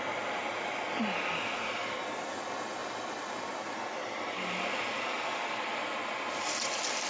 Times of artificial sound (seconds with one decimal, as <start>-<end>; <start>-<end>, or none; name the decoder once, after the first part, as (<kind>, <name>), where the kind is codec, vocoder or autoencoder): none